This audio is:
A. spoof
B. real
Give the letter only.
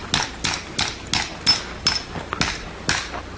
B